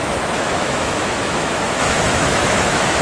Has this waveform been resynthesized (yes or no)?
yes